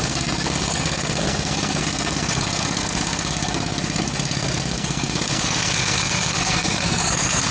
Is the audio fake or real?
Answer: fake